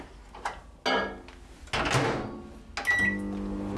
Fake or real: real